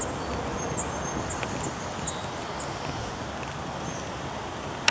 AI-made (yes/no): no